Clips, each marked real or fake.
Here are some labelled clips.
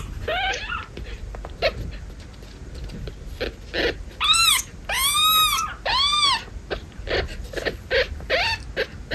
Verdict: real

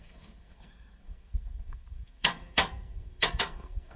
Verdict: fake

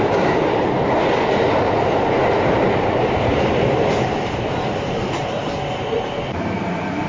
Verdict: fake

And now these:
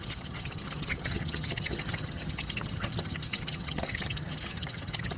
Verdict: fake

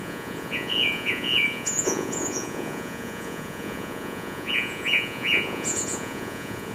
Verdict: fake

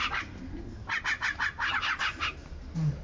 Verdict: real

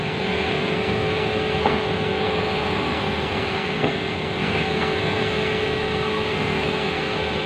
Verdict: fake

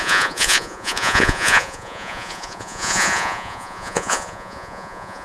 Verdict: fake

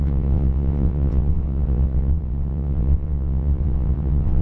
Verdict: fake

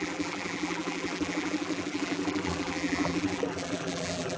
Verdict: fake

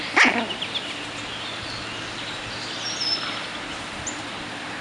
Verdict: real